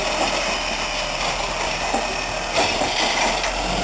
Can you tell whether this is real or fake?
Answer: real